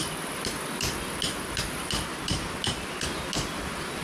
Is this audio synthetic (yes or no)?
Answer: no